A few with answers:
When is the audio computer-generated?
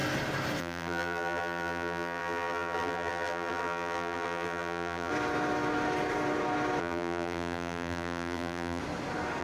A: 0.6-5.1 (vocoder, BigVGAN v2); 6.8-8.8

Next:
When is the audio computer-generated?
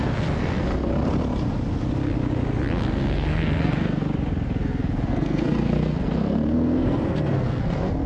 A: 0.0-0.9 (codec, SNAC); 2.9-4.0; 4.6-8.1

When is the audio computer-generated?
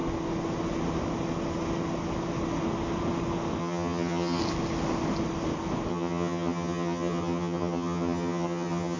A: 3.6-4.4 (vocoder, HiFi-GAN); 5.9-9.0